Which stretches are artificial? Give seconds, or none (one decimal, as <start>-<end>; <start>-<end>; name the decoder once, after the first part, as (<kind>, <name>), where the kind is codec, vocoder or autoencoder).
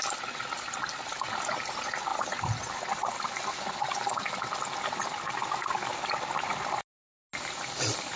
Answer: none